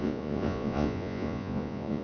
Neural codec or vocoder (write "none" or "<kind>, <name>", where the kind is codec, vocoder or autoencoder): vocoder, Vocos